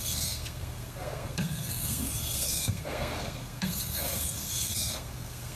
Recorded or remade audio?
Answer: remade